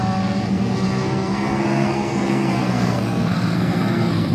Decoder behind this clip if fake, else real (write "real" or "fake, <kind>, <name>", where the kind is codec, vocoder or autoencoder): fake, codec, SNAC